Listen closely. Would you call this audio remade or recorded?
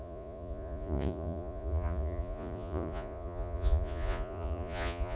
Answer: remade